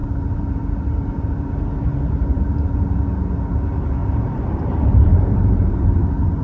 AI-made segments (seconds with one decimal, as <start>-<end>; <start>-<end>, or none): 0.0-2.8; 4.0-5.8